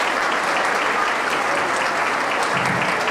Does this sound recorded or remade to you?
recorded